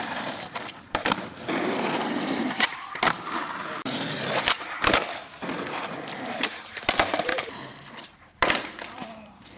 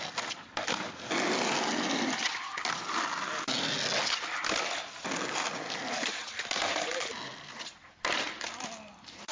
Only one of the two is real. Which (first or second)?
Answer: second